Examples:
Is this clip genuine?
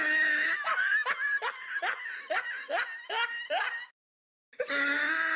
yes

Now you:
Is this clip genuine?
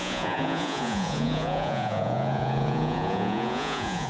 no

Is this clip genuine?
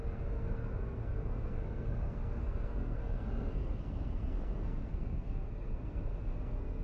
no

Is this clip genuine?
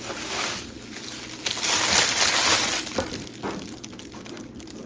yes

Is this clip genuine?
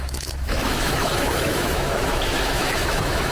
no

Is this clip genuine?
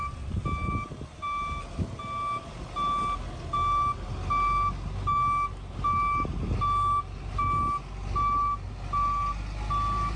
yes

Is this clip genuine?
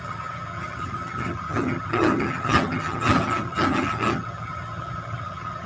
no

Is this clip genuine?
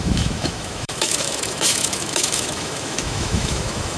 no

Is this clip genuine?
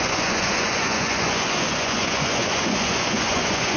no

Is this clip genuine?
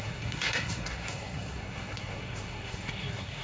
no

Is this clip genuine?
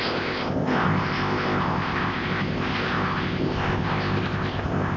no